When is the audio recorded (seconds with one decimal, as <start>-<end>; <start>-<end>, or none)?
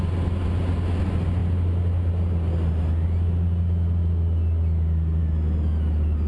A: 0.0-6.3